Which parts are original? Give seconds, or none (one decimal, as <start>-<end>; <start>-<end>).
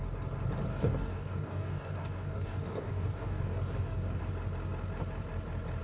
0.0-0.7; 4.2-5.8